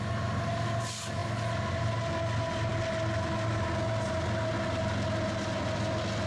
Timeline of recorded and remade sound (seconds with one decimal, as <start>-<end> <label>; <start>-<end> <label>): 0.0-6.3 recorded